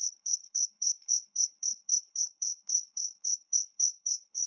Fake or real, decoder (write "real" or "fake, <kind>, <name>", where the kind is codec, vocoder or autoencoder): fake, codec, HILCodec